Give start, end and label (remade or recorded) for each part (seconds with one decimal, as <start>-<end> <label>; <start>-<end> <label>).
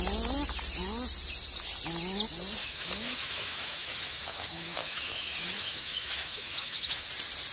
0.0-2.6 recorded; 2.6-7.1 remade; 7.1-7.5 recorded